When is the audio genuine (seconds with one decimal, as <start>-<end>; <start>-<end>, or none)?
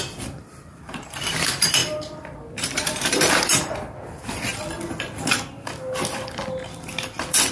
none